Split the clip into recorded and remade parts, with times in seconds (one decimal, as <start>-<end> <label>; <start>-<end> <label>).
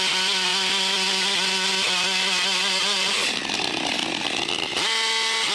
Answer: 0.0-5.5 recorded